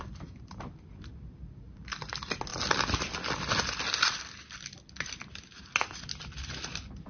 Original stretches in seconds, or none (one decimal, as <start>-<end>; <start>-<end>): 0.0-7.1